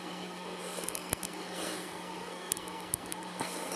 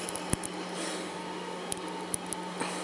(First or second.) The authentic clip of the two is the second